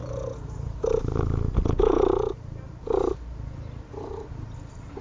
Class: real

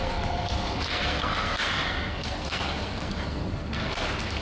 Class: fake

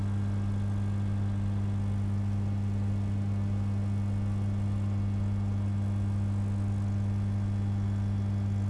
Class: real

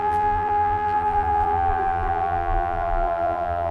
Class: fake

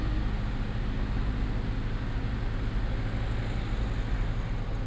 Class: real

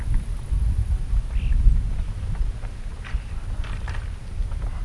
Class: real